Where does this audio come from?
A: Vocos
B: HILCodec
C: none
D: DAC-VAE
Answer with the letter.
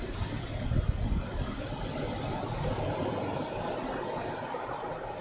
C